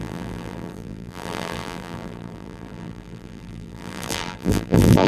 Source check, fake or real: fake